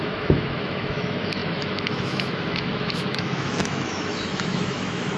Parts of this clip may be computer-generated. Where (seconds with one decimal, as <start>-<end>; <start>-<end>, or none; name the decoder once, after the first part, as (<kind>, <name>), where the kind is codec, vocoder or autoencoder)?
0.0-5.2 (autoencoder, DAC-VAE)